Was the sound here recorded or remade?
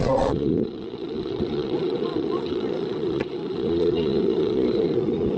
remade